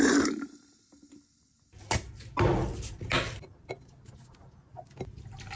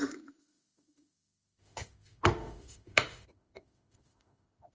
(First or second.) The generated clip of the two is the second